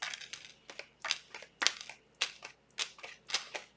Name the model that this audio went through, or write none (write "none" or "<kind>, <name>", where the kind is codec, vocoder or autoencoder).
none